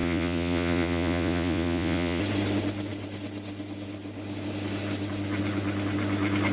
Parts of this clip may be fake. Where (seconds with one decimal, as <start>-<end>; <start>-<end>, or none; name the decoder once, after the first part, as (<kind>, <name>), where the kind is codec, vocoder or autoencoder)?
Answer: 0.0-2.2 (vocoder, Vocos)